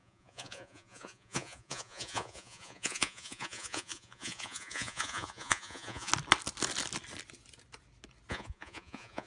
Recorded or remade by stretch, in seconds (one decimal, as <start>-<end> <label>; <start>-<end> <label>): 0.0-6.1 remade; 6.1-8.3 recorded; 8.3-9.3 remade